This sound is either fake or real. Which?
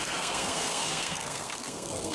fake